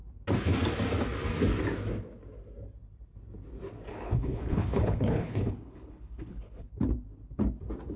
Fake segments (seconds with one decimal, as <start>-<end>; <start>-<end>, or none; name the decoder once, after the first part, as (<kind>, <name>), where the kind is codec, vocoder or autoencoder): 3.9-6.7 (codec, HILCodec)